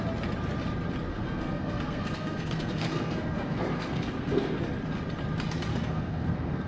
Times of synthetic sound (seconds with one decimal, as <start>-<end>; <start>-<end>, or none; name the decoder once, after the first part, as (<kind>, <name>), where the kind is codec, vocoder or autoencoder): 1.1-4.6 (codec, SNAC); 5.7-6.7